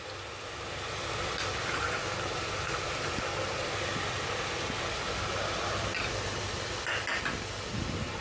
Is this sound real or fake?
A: real